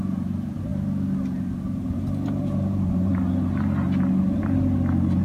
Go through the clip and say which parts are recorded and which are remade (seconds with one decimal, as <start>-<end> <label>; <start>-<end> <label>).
0.0-0.7 remade; 0.7-1.6 recorded; 1.6-3.1 remade; 3.1-5.2 recorded